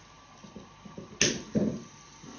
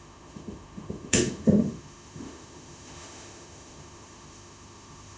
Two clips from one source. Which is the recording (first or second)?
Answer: first